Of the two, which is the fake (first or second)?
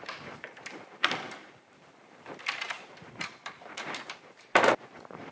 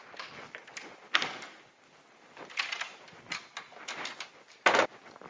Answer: first